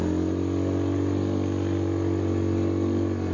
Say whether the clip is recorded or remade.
recorded